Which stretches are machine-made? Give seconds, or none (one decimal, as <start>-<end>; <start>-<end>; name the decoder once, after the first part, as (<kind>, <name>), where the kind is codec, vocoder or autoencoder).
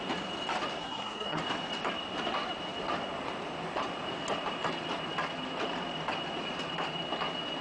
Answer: 0.8-1.4 (codec, SNAC)